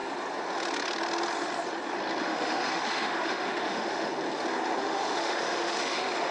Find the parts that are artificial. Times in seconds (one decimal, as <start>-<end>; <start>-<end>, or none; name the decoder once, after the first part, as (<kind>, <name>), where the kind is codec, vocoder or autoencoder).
2.2-4.1 (autoencoder, DAC-VAE); 4.8-6.3